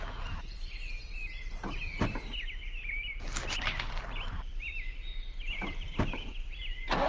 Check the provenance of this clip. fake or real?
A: fake